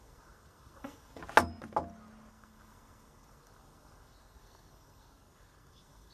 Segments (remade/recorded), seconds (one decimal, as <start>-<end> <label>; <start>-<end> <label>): 0.0-1.2 remade; 1.2-2.3 recorded; 2.3-6.1 remade

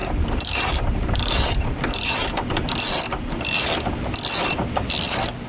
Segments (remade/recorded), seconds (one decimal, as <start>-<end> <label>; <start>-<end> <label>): 0.0-2.5 remade; 2.5-5.5 recorded

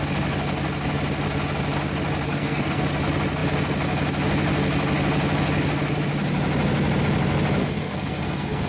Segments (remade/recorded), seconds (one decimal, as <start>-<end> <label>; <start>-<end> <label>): 0.0-2.3 recorded; 2.3-2.8 remade; 2.8-7.6 recorded; 7.6-8.7 remade

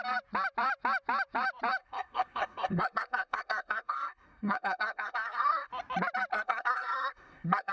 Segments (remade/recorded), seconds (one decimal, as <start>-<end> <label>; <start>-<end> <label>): 0.0-1.8 recorded; 1.8-5.7 remade; 5.7-6.3 recorded; 6.3-7.7 remade

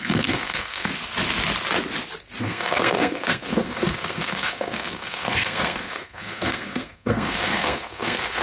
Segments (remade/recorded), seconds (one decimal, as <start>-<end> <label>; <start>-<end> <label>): 0.0-0.9 remade; 0.9-2.4 recorded; 2.4-8.4 remade

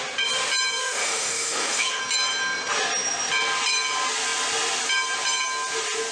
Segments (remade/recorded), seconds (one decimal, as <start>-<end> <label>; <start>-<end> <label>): 0.0-0.8 recorded; 0.8-2.0 remade; 2.0-6.1 recorded

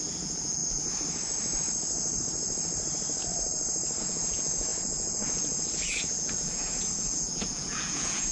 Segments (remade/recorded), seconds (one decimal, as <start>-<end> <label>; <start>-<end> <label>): 0.0-0.6 remade; 0.6-4.0 recorded; 4.0-8.3 remade